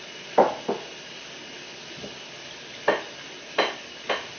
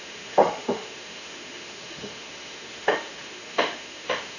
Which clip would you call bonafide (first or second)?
first